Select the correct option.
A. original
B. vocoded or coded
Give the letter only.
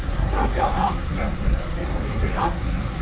B